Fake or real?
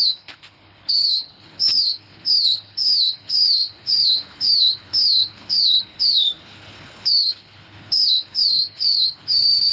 fake